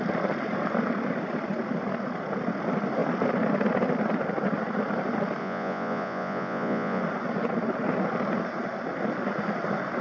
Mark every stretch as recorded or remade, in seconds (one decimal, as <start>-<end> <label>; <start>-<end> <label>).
0.0-5.4 recorded; 5.4-7.0 remade; 7.0-10.0 recorded